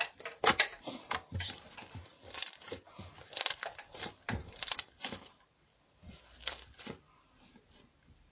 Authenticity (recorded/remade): remade